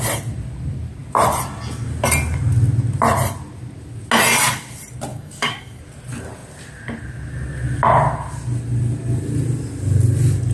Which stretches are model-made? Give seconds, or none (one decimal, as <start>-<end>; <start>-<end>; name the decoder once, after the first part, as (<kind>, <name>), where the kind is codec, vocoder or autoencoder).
5.1-5.8 (codec, DAC)